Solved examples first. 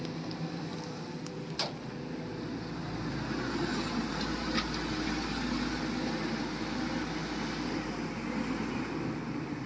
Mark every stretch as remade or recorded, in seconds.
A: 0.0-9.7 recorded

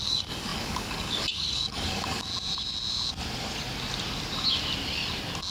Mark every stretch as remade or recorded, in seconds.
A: 0.0-2.3 remade; 2.3-5.5 recorded